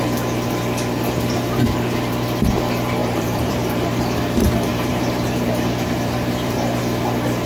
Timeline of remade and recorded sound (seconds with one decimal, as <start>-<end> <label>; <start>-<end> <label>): 0.0-3.0 recorded; 3.0-4.0 remade; 4.0-4.7 recorded; 4.7-6.8 remade; 6.8-7.5 recorded